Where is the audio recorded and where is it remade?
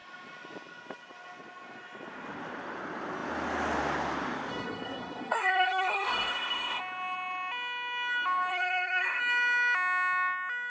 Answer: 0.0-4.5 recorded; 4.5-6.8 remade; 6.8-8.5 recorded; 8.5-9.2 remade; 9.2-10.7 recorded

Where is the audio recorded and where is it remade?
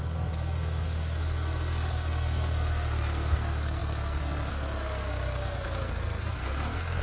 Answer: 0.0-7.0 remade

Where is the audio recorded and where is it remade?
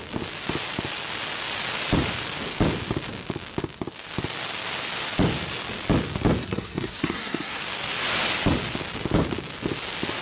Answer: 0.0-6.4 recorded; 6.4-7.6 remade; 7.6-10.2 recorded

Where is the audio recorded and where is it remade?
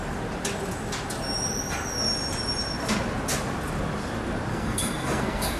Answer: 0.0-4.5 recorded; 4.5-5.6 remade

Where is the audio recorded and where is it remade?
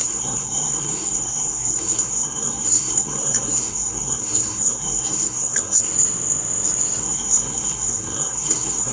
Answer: 0.0-5.9 remade; 5.9-7.0 recorded; 7.0-8.9 remade